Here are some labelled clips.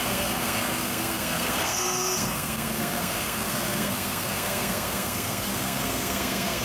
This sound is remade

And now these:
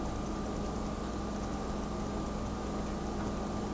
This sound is recorded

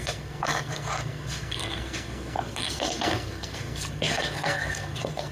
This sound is remade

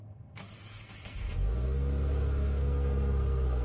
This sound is remade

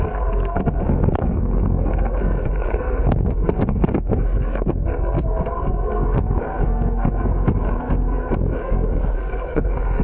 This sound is remade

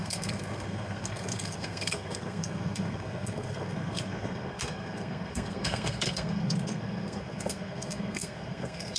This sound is remade